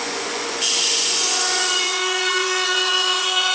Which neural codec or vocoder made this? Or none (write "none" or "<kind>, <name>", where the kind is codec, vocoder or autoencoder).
vocoder, Vocos